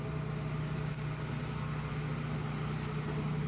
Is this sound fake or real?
real